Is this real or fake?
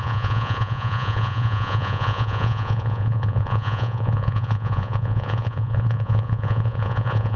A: fake